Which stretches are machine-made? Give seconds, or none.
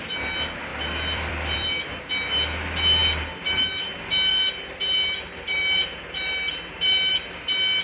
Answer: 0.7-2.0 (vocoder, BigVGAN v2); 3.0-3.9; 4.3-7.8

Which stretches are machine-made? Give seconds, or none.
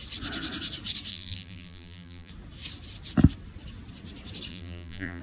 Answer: 1.1-2.3 (vocoder, BigVGAN v2); 4.5-5.2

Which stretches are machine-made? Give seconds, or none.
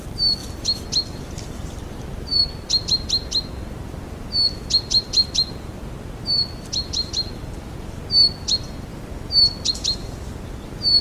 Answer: 8.9-9.7 (vocoder, BigVGAN v2)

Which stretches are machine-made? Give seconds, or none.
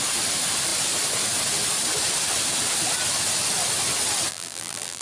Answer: 4.3-5.0 (vocoder, BigVGAN v2)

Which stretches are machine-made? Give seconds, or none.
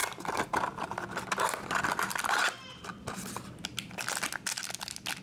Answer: none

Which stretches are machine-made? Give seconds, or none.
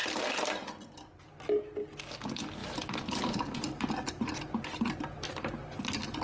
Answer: 0.0-1.3 (vocoder, BigVGAN v2); 2.6-5.3